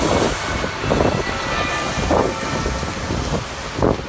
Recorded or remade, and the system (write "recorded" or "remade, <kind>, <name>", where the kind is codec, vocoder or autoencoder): recorded